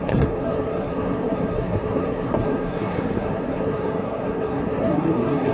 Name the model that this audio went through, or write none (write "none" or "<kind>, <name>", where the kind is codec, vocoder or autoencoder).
codec, SNAC